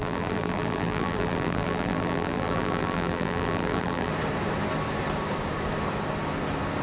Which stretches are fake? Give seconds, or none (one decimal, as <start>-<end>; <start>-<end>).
0.0-4.1